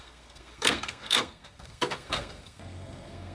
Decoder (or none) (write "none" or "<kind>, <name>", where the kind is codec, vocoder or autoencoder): codec, SNAC